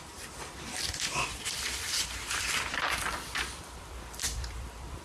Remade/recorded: remade